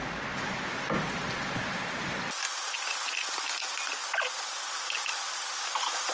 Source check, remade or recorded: recorded